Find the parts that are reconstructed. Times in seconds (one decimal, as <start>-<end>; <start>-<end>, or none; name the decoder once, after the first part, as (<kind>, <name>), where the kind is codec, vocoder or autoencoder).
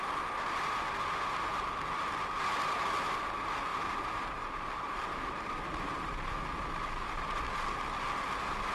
3.7-5.3 (vocoder, BigVGAN v2)